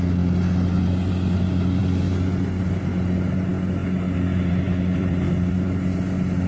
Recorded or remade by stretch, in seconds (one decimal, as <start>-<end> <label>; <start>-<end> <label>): 0.0-6.5 recorded